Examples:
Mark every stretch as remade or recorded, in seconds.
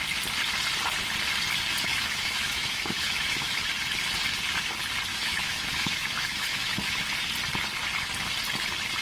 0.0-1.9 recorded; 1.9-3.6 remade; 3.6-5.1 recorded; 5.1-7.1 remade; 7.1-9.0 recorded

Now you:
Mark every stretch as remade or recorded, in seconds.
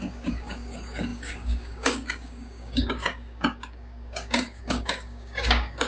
0.0-5.9 remade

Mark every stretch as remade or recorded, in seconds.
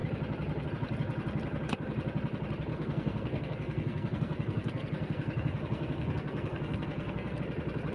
0.0-2.7 recorded; 2.7-7.4 remade; 7.4-7.9 recorded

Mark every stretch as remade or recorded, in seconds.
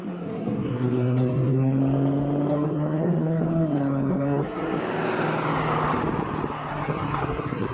0.0-1.8 remade; 1.8-2.5 recorded; 2.5-4.8 remade; 4.8-6.7 recorded; 6.7-7.7 remade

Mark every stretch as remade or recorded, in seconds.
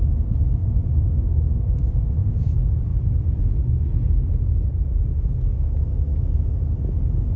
0.0-7.4 recorded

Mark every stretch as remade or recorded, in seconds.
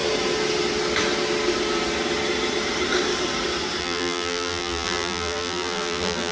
0.0-3.8 recorded; 3.8-6.3 remade